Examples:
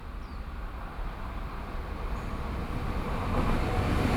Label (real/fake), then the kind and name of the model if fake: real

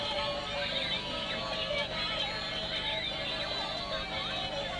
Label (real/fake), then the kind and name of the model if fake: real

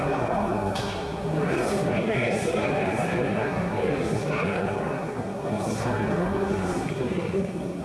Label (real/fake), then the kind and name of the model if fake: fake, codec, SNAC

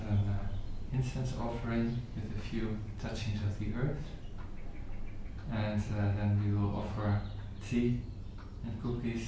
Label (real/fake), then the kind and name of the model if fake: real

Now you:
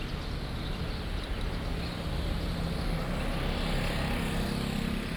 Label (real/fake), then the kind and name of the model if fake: real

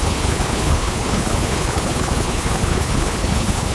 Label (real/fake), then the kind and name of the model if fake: fake, codec, HILCodec